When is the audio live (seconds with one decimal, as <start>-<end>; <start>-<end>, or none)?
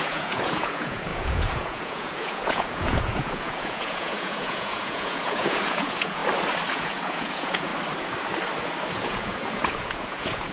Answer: 6.2-6.7; 7.7-8.9